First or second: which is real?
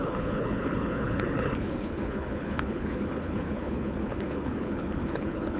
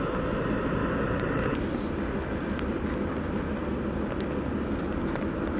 second